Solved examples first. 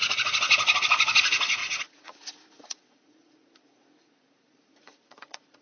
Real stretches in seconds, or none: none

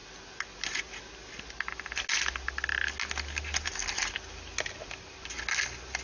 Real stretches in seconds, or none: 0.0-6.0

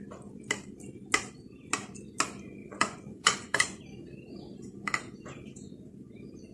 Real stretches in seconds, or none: 0.0-2.6; 3.8-6.5

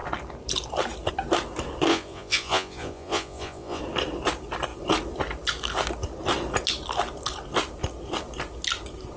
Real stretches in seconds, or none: 0.0-1.9; 3.8-9.2

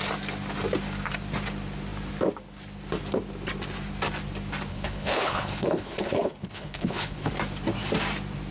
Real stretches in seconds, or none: 0.0-4.7; 7.3-8.5

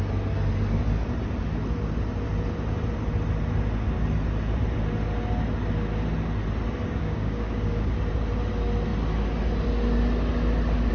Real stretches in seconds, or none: 0.0-6.8; 8.0-10.9